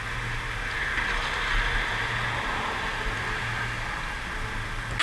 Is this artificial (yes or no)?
no